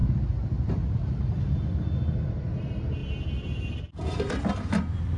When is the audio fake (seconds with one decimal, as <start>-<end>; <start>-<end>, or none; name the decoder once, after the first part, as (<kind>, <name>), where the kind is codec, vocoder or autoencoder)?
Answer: none